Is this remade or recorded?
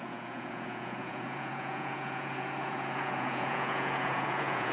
remade